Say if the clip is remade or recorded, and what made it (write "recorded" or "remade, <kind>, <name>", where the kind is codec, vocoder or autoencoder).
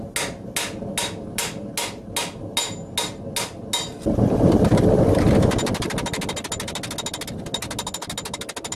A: recorded